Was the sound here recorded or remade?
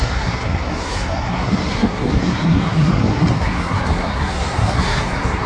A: remade